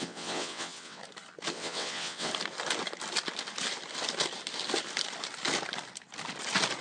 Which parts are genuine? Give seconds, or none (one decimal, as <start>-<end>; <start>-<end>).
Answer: 1.0-1.5; 2.3-6.8